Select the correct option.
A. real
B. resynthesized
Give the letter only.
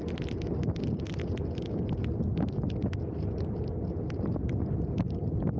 A